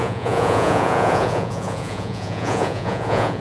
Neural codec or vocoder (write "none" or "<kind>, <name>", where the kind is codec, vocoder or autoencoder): vocoder, Vocos